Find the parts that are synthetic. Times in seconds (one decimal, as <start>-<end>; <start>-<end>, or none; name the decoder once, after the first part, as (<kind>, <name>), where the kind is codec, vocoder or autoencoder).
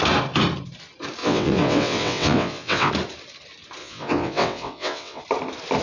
1.2-2.9 (vocoder, WaveNeXt); 3.8-5.2